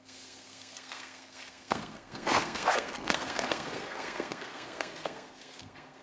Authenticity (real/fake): fake